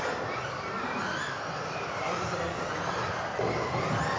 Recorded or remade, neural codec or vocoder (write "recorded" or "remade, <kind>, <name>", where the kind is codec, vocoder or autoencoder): recorded